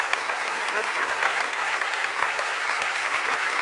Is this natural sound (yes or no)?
no